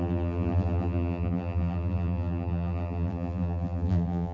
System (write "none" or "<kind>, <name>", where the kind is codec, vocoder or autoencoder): vocoder, BigVGAN v2